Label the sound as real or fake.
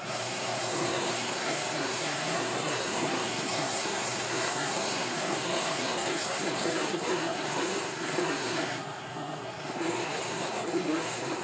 fake